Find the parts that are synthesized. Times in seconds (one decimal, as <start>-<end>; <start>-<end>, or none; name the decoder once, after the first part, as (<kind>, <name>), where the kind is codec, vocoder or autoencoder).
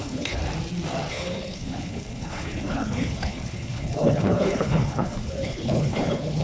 0.0-0.4 (codec, HILCodec); 1.1-6.4